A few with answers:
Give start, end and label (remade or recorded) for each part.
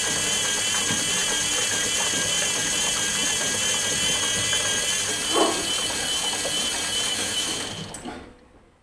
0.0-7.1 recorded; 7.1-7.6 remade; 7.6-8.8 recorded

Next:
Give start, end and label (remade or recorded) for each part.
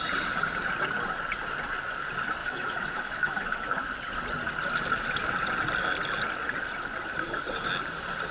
0.0-2.4 recorded; 2.4-3.9 remade; 3.9-8.3 recorded